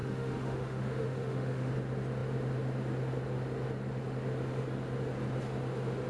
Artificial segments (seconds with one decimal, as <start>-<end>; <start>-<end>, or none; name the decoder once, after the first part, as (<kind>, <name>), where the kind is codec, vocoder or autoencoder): 0.0-1.7 (autoencoder, DAC-VAE)

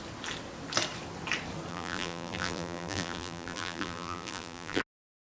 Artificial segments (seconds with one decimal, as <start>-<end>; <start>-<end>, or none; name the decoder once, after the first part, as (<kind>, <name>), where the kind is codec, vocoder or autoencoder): 1.7-4.8 (vocoder, BigVGAN v2)

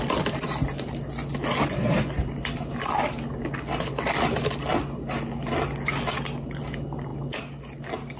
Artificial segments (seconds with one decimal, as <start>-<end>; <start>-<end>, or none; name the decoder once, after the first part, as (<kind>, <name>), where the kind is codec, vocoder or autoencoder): none

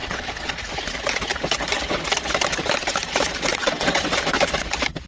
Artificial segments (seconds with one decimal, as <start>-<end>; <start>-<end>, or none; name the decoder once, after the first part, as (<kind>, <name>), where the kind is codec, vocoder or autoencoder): 0.0-0.5 (vocoder, WaveNeXt); 3.5-4.1

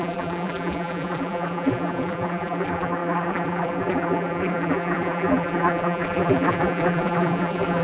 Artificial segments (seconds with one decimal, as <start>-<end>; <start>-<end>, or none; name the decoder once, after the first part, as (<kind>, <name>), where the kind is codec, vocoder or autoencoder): 0.0-7.8 (vocoder, BigVGAN v2)

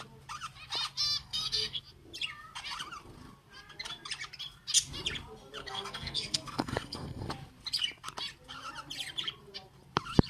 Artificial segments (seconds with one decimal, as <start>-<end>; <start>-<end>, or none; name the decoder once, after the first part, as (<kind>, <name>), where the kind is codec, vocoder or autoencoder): 1.2-1.8 (codec, SNAC); 5.6-7.3

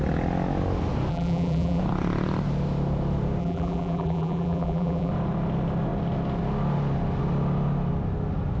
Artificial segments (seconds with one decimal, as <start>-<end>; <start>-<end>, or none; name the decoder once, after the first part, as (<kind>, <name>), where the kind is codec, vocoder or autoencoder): 1.1-1.8 (vocoder, BigVGAN v2); 3.4-5.1